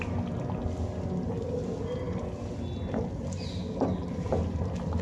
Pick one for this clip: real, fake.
real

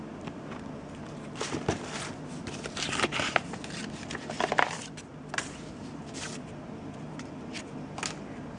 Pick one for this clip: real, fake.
fake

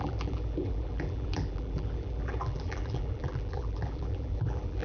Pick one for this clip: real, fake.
fake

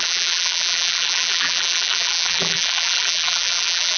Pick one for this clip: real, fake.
fake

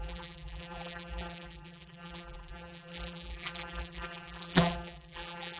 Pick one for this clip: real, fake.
fake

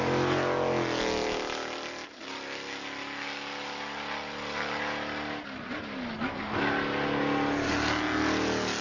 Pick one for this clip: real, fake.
real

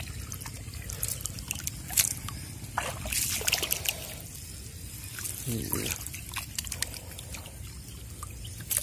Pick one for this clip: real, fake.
real